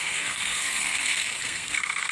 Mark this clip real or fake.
fake